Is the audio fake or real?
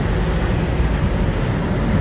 real